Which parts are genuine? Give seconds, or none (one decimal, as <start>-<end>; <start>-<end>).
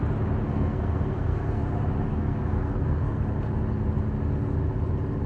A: 0.0-0.5; 1.6-2.1; 3.2-5.3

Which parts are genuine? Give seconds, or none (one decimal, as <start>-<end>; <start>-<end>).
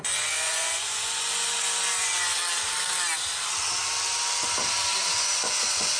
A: 2.4-5.1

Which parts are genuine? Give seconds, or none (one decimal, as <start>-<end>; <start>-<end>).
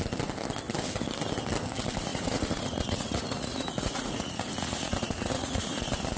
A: 0.0-2.1; 5.8-6.2